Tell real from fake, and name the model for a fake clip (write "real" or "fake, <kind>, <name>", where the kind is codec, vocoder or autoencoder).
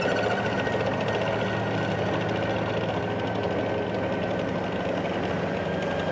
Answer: real